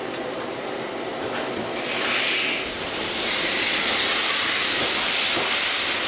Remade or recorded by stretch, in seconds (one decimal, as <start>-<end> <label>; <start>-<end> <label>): 0.0-6.1 recorded